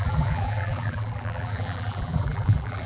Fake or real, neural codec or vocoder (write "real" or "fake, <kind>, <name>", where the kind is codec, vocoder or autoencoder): fake, vocoder, BigVGAN v2